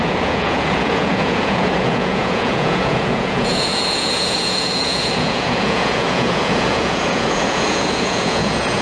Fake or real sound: fake